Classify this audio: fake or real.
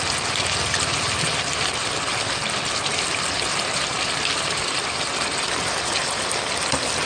real